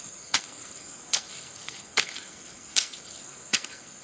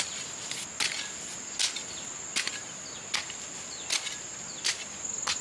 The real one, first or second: second